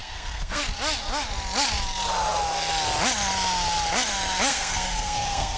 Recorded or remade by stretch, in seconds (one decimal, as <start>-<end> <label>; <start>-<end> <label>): 0.0-0.6 remade; 0.6-4.5 recorded; 4.5-5.6 remade